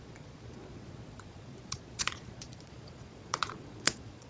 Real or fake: fake